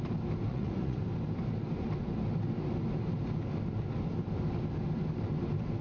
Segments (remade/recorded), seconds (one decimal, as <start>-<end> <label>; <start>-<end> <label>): 0.0-0.5 recorded; 0.5-1.0 remade; 1.0-5.8 recorded